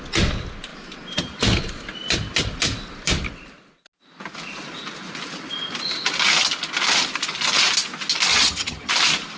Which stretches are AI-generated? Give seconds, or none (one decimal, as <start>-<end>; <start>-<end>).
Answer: 8.3-8.9